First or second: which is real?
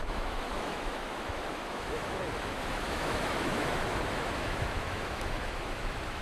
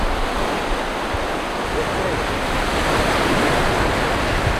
second